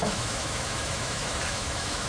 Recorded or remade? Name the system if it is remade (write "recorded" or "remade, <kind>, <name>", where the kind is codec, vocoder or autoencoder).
remade, autoencoder, DAC-VAE